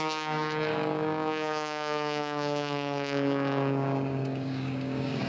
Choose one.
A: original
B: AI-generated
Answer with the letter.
B